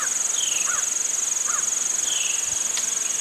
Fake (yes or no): no